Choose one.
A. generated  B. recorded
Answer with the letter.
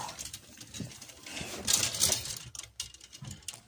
B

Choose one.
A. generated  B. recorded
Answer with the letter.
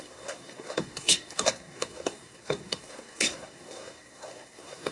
A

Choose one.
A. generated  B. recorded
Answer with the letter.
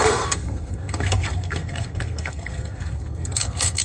A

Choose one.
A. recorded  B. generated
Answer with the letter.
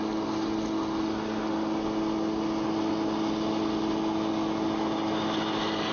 A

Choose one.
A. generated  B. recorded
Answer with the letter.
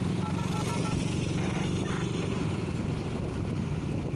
B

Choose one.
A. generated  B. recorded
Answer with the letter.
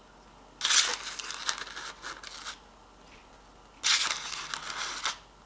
B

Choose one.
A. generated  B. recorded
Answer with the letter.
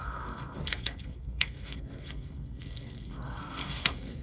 A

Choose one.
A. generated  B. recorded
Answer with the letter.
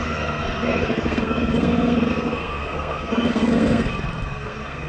A